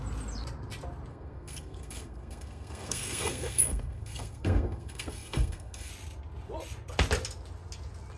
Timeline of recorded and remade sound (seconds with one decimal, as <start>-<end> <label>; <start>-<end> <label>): 0.0-1.1 recorded; 1.1-5.9 remade; 5.9-8.2 recorded